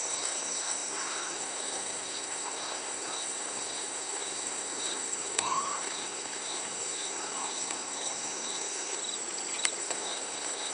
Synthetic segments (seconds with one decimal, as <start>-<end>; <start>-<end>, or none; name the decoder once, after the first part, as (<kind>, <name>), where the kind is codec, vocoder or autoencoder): 0.0-9.0 (codec, SNAC); 9.8-10.7